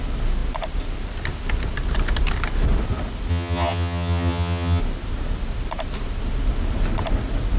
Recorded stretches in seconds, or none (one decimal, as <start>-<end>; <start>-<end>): 0.0-3.3; 4.8-7.6